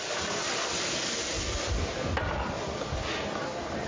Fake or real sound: real